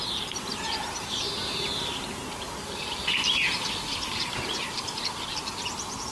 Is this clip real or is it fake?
fake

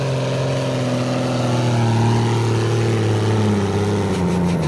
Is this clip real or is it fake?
real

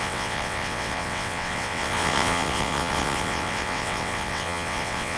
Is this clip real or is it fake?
fake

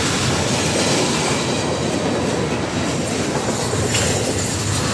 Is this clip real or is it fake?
real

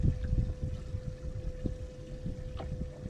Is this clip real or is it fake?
real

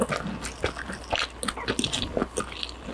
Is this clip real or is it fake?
real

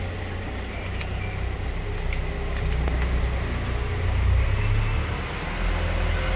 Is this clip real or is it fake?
real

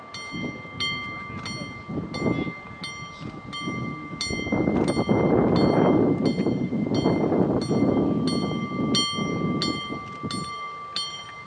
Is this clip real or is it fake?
real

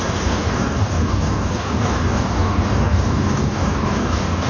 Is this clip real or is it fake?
fake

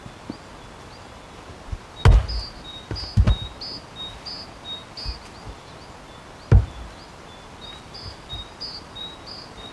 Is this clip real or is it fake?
real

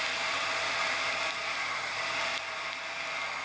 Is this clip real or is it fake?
real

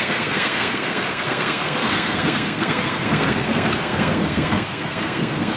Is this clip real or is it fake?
fake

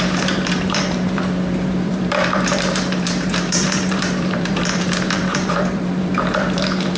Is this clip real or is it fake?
fake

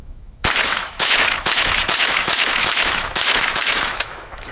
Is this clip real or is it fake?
fake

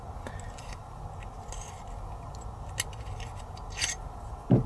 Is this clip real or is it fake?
real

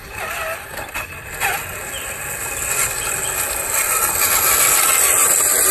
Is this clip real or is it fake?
real